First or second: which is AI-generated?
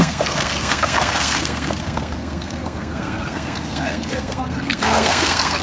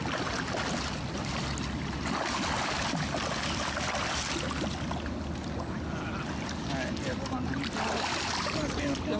first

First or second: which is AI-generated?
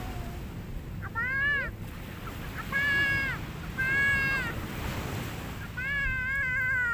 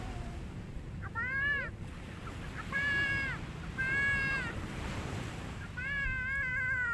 second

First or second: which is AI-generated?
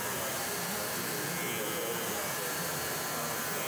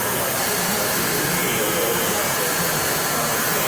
second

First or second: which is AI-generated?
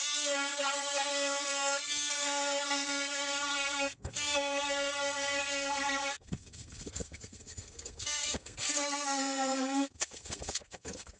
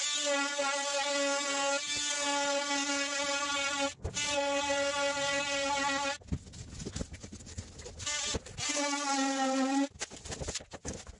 first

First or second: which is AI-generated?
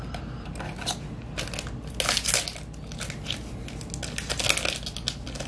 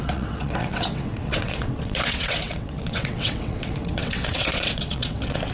second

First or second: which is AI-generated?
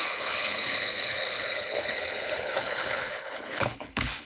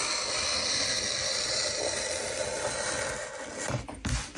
first